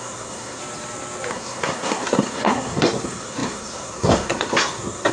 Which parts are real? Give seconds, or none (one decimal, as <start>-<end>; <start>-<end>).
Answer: 0.6-1.3